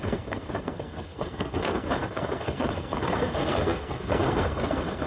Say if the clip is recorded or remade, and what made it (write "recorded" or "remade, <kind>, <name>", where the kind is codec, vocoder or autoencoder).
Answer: remade, codec, SNAC